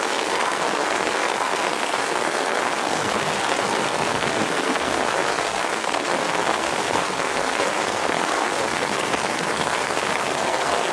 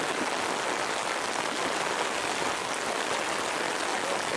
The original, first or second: second